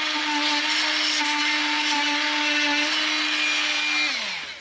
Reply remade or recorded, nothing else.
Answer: recorded